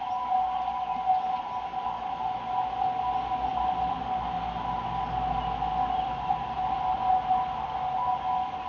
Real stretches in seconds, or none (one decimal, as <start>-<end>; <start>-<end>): 0.0-8.7